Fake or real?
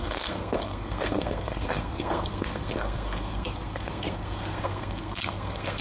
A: fake